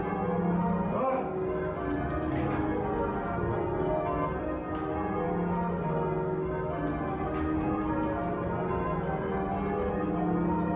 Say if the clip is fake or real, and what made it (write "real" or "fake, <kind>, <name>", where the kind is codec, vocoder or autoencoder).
real